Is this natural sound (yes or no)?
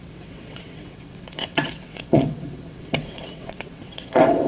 no